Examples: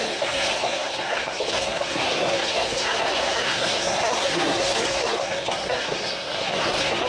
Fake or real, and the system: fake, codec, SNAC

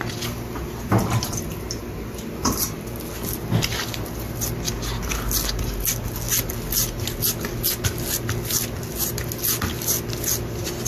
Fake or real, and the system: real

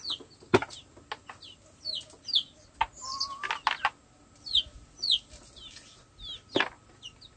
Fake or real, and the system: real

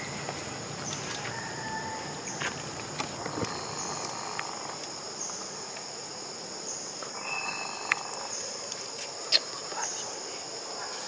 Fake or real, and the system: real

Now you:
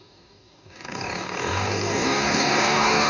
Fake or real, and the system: fake, codec, DAC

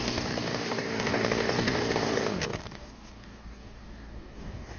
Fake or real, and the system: fake, codec, DAC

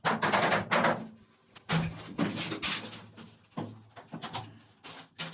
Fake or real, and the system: real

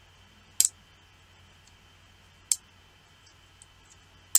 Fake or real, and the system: real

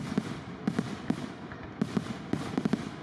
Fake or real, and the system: real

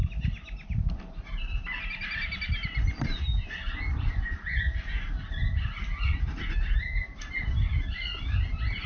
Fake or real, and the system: real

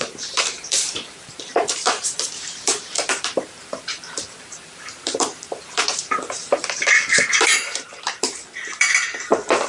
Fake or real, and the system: fake, vocoder, BigVGAN v2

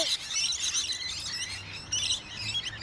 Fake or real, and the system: real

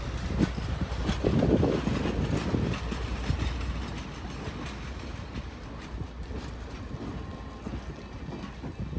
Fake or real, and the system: real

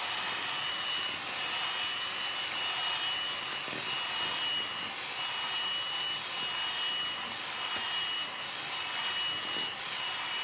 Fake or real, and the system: real